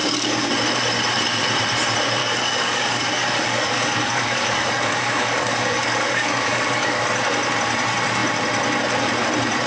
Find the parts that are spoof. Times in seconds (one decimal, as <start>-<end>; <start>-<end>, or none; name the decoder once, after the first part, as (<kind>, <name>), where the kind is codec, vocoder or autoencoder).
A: 0.0-0.5 (codec, DAC); 2.2-7.0